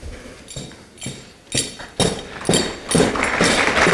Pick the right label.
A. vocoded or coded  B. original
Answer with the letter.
B